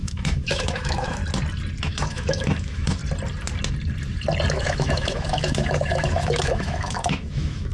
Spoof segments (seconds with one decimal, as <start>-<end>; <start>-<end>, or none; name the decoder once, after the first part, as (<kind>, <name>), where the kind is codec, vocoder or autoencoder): 0.0-1.2 (autoencoder, DAC-VAE); 1.8-3.0; 4.5-7.7